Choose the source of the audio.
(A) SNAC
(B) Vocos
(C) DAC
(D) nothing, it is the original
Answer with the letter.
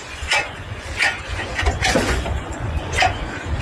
B